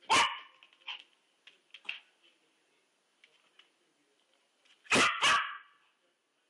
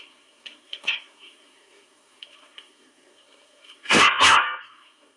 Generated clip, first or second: second